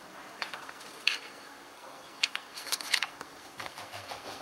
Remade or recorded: remade